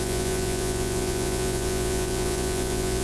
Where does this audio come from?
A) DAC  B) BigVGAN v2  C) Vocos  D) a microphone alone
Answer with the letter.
C